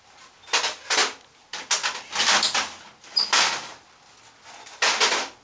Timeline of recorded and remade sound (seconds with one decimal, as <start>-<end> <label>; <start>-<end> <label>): 0.0-5.4 recorded